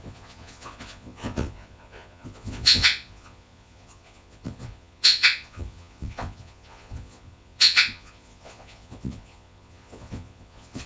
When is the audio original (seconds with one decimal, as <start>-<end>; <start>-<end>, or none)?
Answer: none